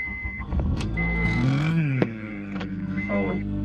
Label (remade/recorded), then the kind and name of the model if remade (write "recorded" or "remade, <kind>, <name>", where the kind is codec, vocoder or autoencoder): remade, codec, SNAC